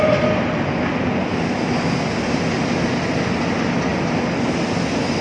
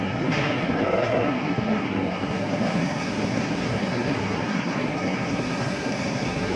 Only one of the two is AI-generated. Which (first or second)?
second